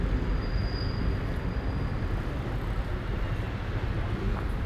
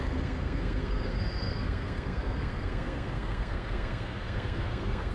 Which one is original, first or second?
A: first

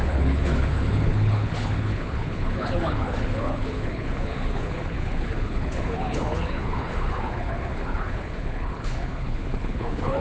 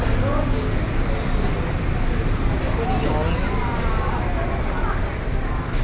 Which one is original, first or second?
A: second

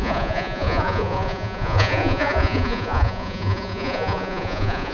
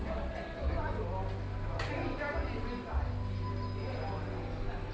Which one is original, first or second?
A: second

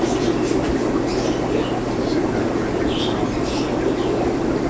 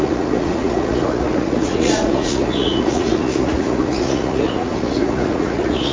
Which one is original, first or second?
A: first